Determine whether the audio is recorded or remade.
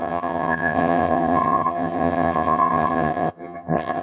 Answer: remade